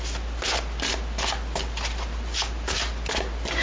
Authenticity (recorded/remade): recorded